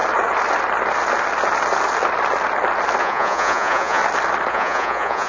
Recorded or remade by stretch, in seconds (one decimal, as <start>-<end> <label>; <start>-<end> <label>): 0.0-3.0 recorded; 3.0-4.0 remade; 4.0-4.5 recorded; 4.5-5.3 remade